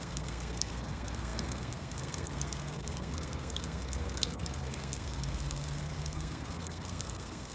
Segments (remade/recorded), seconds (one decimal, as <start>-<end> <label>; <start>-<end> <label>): 0.0-7.5 remade